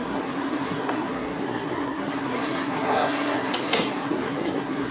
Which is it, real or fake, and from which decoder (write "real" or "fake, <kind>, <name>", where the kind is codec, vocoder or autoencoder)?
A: fake, codec, SNAC